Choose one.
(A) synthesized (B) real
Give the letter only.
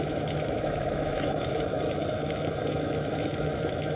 A